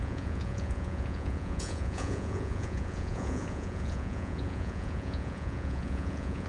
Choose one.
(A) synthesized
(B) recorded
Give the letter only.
A